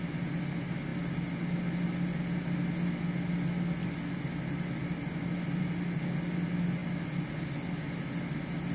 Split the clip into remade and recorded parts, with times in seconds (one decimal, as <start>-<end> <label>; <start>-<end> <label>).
0.0-8.7 recorded